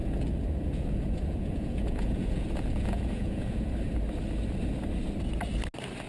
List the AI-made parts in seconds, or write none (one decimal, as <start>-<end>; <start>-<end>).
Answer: 0.0-3.7